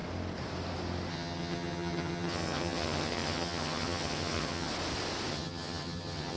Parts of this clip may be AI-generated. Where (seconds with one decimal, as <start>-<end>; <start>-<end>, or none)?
1.1-4.7; 5.3-6.4